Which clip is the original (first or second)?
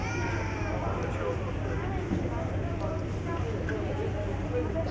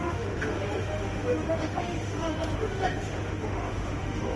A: first